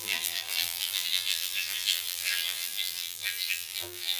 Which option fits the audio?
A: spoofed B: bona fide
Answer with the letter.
A